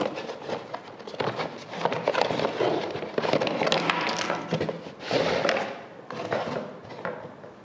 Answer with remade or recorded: recorded